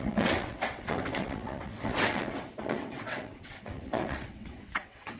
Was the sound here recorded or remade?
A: remade